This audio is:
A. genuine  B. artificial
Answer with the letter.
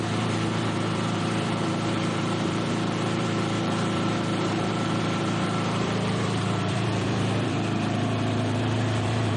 B